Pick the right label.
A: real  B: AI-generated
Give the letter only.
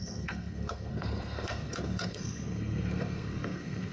B